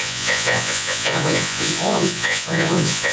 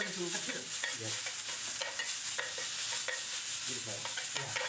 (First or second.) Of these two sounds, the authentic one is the second